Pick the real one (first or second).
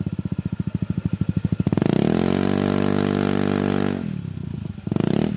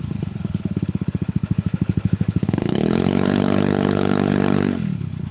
first